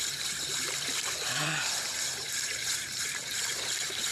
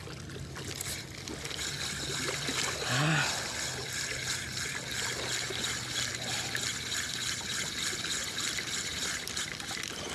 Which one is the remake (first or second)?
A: first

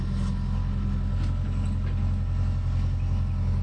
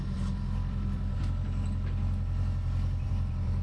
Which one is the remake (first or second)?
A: second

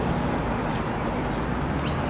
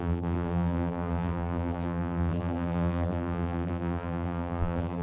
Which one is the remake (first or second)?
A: second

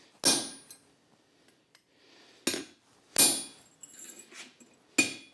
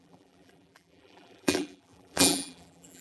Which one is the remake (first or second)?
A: second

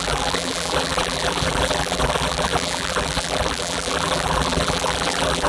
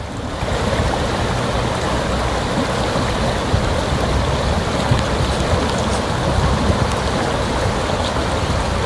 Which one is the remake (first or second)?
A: first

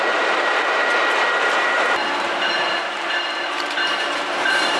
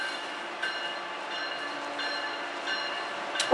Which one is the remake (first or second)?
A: first